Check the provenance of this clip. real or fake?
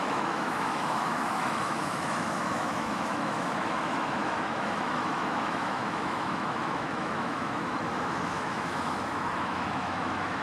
fake